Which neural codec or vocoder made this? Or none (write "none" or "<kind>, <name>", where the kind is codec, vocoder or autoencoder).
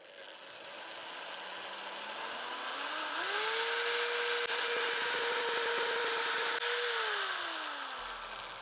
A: none